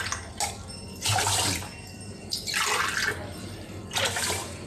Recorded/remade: recorded